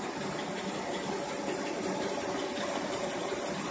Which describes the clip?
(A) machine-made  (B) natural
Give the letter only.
B